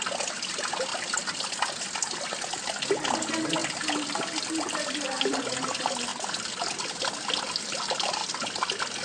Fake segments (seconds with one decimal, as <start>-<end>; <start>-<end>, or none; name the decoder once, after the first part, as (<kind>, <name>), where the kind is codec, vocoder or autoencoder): 0.9-1.4 (vocoder, BigVGAN v2); 3.6-5.4; 6.1-7.1